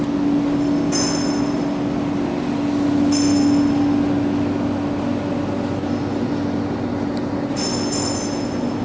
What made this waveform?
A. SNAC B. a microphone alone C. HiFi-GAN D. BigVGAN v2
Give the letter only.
B